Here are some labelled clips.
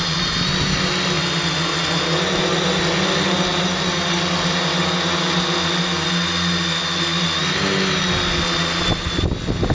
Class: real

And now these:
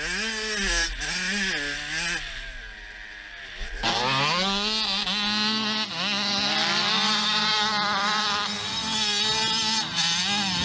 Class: real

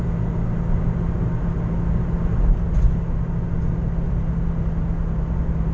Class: real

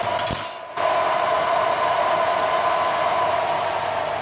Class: real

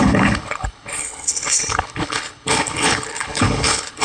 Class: fake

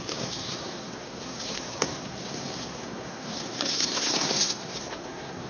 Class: fake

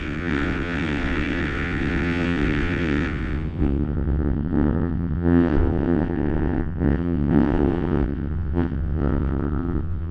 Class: fake